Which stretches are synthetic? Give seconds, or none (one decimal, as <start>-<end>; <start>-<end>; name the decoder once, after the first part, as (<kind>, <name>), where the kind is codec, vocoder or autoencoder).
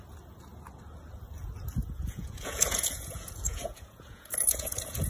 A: 1.8-5.1 (vocoder, Vocos)